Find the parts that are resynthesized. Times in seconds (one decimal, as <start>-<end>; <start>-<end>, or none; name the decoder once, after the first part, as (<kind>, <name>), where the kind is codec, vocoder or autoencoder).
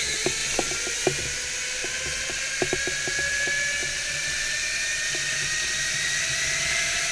3.8-7.1 (vocoder, BigVGAN v2)